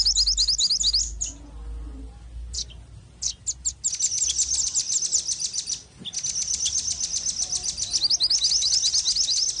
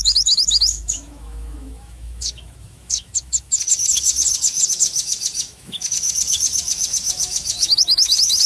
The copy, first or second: second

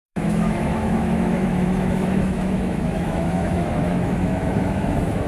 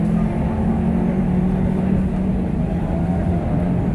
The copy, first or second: first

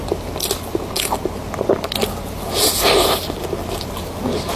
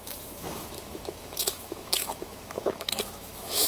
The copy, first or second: second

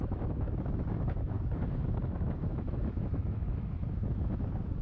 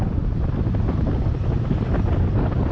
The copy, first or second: first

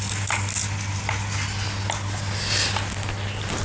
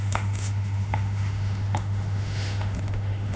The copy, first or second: second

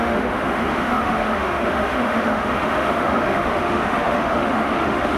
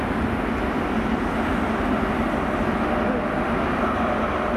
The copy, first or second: first